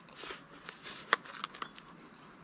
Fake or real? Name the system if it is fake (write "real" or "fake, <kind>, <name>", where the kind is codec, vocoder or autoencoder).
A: real